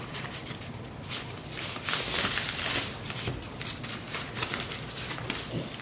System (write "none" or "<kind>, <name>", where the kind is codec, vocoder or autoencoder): vocoder, BigVGAN v2